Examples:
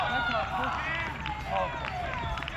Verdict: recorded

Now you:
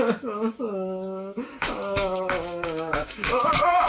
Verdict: remade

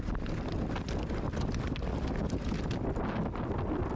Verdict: recorded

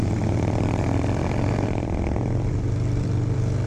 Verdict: remade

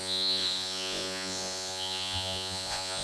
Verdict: remade